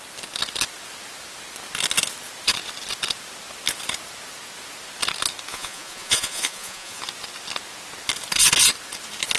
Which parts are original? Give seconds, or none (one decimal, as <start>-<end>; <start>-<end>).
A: 0.0-5.5; 7.0-9.4